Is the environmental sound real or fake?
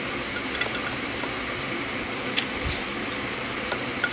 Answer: real